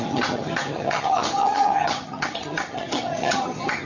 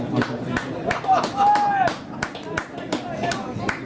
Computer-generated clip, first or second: first